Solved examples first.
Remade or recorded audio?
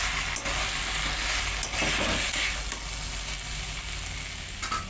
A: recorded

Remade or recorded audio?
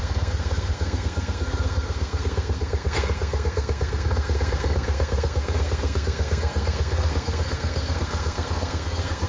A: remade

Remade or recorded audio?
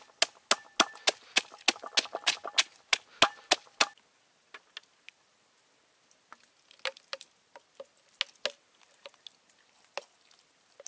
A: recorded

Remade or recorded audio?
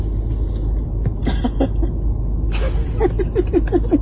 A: recorded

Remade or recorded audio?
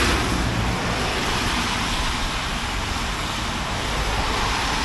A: recorded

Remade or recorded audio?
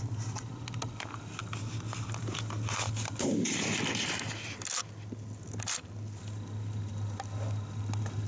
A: recorded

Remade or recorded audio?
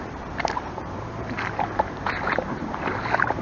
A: remade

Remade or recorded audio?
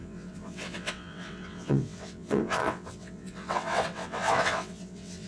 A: remade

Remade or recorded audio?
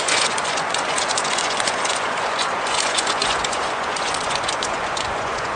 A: remade